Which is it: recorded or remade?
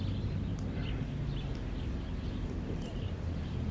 recorded